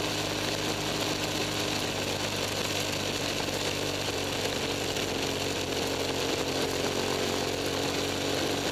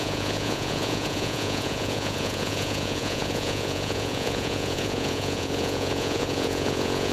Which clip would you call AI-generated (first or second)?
second